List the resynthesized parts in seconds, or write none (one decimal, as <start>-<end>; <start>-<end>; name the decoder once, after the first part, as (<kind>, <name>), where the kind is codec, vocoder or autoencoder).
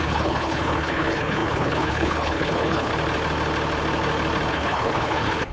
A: 0.0-2.9 (codec, HILCodec); 4.5-5.5